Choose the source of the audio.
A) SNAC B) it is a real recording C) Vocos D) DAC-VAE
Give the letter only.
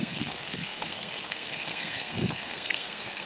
A